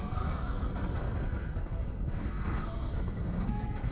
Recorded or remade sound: remade